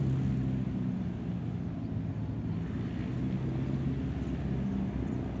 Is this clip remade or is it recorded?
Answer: recorded